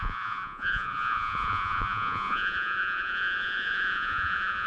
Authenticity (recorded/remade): remade